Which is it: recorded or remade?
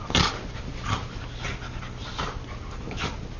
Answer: recorded